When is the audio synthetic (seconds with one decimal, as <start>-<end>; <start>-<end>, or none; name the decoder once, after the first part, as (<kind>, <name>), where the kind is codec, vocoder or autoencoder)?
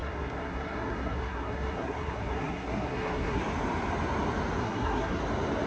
0.0-3.4 (codec, SNAC); 4.6-5.2